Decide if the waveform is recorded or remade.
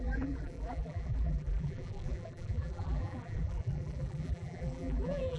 remade